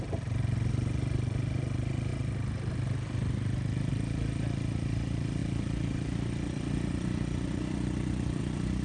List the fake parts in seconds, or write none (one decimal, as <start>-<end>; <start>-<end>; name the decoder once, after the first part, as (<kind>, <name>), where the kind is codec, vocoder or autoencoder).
none